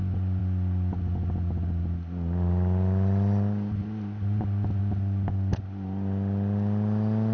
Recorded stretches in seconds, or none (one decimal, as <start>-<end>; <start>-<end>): 0.0-7.3